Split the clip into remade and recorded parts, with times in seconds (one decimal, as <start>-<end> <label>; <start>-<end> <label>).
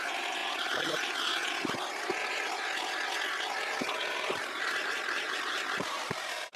0.0-0.4 remade; 0.4-4.4 recorded; 4.4-6.6 remade